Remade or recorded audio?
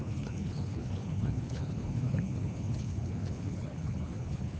remade